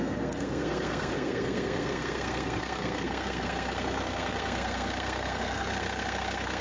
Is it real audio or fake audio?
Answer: fake